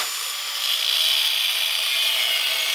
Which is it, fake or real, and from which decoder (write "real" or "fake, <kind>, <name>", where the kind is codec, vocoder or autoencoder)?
real